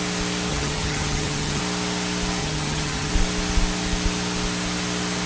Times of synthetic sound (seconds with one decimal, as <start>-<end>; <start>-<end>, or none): 0.5-1.6; 2.4-3.1